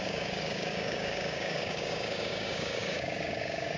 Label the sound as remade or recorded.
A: remade